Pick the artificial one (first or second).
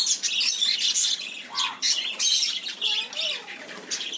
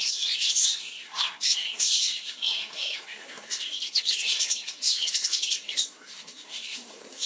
second